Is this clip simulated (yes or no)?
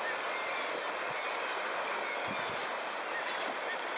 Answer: no